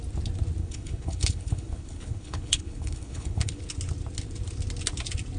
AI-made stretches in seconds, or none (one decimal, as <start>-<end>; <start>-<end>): 0.6-3.6